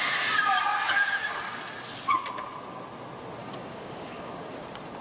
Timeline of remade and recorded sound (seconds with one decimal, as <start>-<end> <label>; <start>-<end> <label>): 0.0-3.4 recorded; 3.4-4.3 remade; 4.3-5.0 recorded